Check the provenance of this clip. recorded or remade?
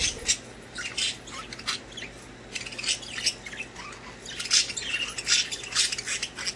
recorded